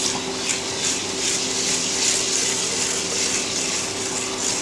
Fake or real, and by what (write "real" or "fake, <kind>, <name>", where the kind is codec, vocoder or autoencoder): real